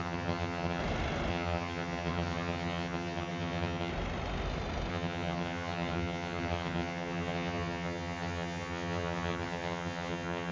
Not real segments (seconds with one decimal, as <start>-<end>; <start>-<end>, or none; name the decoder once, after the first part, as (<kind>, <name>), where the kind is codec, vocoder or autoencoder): 0.0-0.8 (vocoder, HiFi-GAN); 1.3-3.9; 4.9-10.5